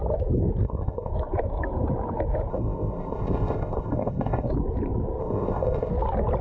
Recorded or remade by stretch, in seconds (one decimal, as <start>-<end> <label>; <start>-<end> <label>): 0.0-0.6 recorded; 0.6-1.1 remade; 1.1-2.5 recorded; 2.5-4.5 remade; 4.5-5.2 recorded; 5.2-5.9 remade; 5.9-6.4 recorded